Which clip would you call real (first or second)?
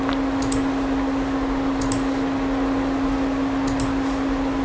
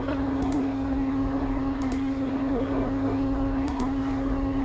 first